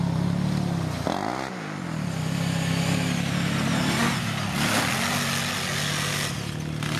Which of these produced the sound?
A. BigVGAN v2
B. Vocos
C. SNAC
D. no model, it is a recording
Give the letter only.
D